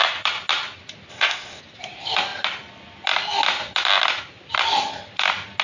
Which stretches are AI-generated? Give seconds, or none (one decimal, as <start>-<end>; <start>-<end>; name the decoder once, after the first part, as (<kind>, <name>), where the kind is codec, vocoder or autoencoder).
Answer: 1.1-1.6 (codec, ZipCodec)